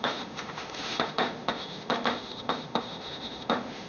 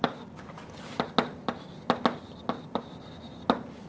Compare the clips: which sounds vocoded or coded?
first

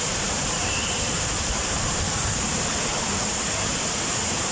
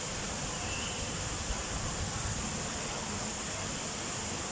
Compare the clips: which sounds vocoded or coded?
first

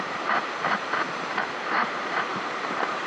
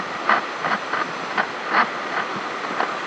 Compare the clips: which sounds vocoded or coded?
first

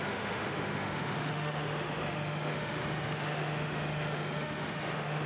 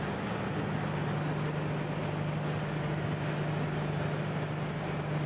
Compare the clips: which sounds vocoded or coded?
first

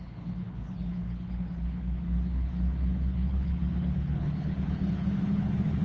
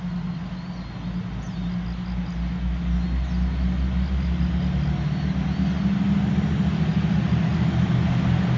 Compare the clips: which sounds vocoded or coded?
first